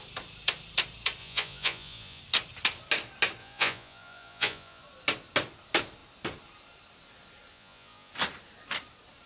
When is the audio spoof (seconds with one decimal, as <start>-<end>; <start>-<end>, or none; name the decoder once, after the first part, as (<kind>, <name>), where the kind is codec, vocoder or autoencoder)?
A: 1.2-2.2 (vocoder, Vocos); 3.4-4.8; 7.5-8.1